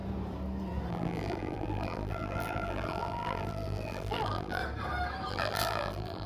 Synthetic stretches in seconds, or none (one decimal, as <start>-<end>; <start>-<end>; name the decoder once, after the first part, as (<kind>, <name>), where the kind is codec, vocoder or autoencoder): 0.9-4.6 (vocoder, BigVGAN v2); 5.3-6.3